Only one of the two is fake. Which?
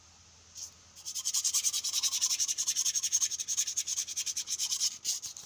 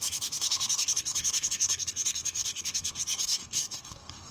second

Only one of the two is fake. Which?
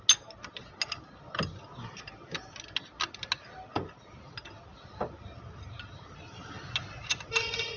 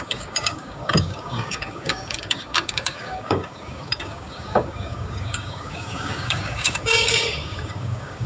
second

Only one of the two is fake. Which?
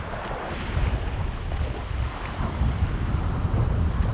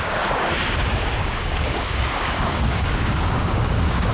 second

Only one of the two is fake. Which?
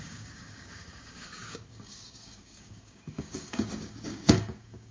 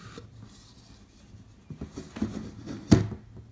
first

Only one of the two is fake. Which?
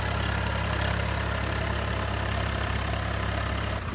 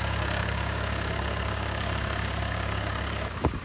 second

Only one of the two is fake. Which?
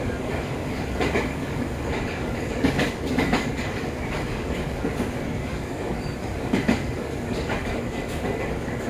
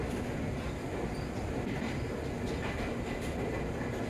first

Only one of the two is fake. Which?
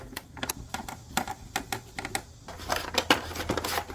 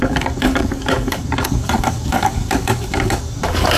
second